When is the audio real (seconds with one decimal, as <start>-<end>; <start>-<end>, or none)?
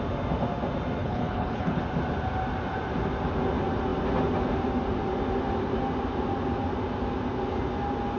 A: 0.0-1.0; 1.8-8.2